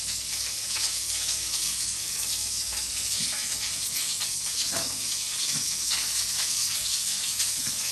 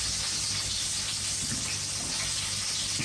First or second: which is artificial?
first